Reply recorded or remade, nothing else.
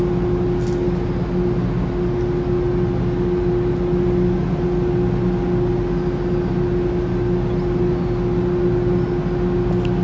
recorded